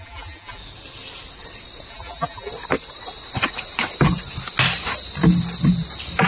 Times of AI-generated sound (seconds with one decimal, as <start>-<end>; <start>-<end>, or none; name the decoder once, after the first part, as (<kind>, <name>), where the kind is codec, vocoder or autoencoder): 0.0-0.6 (vocoder, BigVGAN v2); 1.9-2.5